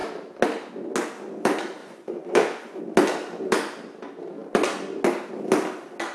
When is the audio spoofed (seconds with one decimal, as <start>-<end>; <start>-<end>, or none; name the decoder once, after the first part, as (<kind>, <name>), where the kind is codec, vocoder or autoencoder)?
1.8-2.8 (vocoder, Vocos)